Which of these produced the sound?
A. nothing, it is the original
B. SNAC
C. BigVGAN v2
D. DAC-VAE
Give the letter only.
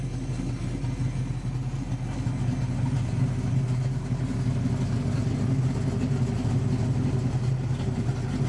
A